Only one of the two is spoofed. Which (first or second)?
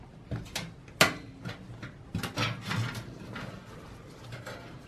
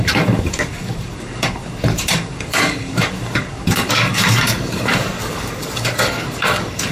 second